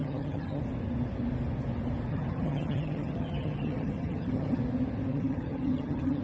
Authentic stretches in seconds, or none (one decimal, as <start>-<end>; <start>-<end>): 0.6-2.1; 4.6-5.1